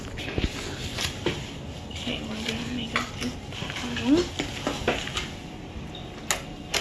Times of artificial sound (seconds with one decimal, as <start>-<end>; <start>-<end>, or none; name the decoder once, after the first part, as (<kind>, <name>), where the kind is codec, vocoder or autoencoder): none